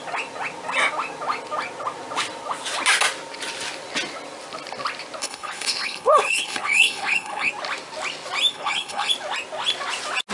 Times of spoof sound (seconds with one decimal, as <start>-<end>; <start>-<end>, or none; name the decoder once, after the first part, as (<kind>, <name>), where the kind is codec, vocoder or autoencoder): 5.2-7.5 (codec, HILCodec); 8.5-9.1